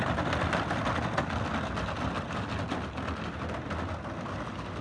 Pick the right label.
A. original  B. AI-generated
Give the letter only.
A